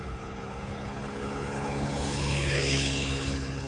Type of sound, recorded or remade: remade